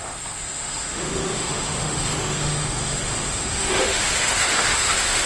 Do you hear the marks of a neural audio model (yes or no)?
yes